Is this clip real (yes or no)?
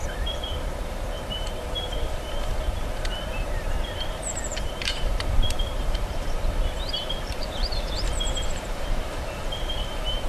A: no